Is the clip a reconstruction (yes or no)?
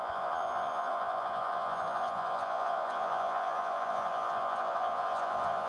yes